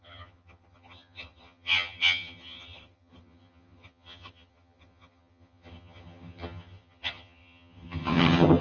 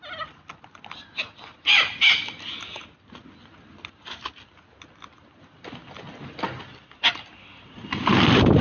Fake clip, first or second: first